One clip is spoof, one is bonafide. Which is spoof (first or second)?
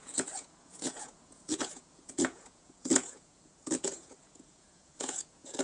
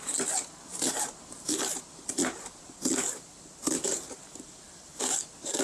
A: first